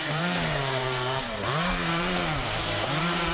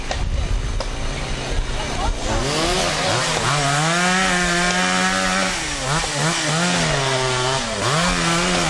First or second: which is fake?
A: first